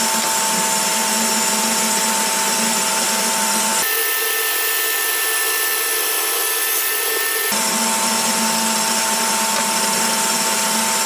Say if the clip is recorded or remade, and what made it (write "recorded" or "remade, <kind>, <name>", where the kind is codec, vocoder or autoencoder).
recorded